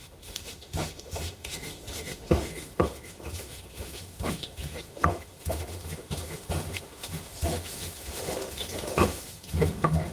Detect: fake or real fake